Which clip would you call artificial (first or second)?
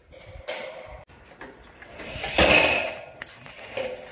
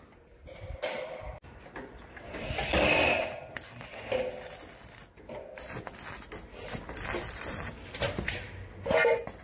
first